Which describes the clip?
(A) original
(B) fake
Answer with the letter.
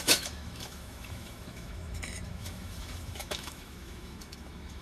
B